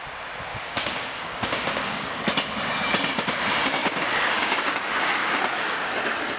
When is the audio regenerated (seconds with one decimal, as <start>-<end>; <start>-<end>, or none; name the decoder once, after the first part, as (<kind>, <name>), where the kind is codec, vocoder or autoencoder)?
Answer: 0.5-2.2 (codec, DAC); 3.8-4.8; 5.2-5.9